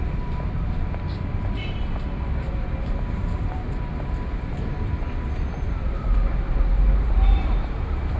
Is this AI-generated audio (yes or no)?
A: yes